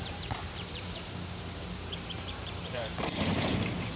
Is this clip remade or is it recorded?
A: remade